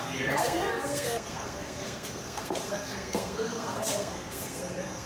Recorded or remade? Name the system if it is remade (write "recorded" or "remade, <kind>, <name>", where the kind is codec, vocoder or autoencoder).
remade, codec, SNAC